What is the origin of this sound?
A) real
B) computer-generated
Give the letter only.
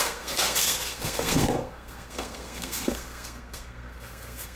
B